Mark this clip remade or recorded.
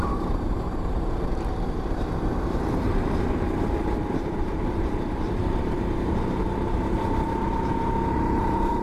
remade